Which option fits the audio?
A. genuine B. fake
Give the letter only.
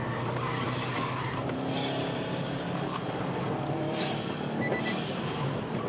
A